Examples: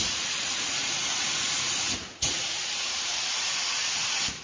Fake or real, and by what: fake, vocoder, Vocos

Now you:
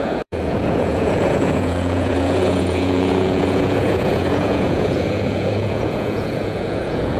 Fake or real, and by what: fake, vocoder, Vocos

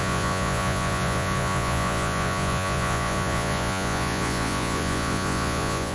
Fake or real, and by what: fake, vocoder, Vocos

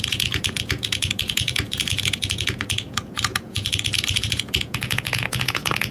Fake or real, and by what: fake, vocoder, Vocos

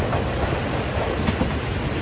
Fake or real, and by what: real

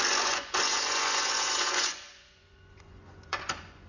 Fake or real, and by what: fake, vocoder, Vocos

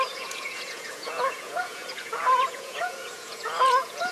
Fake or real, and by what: fake, vocoder, Vocos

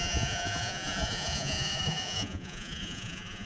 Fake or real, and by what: fake, vocoder, Vocos